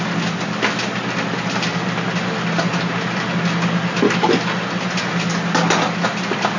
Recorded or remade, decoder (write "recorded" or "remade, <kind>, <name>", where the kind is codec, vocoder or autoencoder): recorded